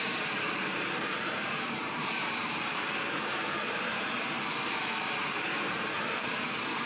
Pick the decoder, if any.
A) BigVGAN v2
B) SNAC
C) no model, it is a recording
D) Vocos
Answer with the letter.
A